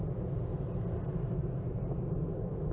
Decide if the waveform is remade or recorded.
recorded